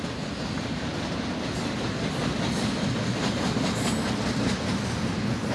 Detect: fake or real real